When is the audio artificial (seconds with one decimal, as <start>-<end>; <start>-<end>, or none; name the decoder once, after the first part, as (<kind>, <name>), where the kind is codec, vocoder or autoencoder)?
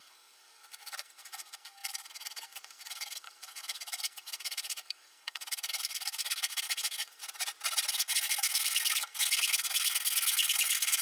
0.0-7.2 (codec, SNAC); 7.9-11.0